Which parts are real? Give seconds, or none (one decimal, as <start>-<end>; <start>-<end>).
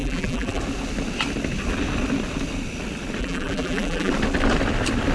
0.6-3.2; 4.1-5.1